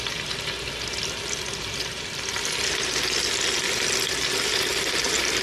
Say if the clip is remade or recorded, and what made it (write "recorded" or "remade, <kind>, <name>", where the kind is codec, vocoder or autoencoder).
remade, vocoder, BigVGAN v2